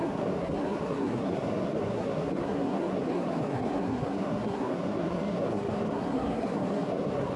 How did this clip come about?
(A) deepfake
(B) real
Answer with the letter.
A